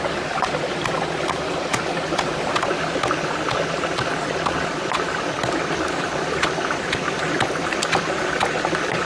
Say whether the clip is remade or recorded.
recorded